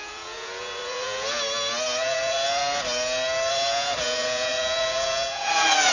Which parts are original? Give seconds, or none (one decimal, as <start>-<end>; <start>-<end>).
1.4-2.0; 2.6-3.5